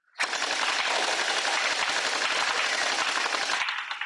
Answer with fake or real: real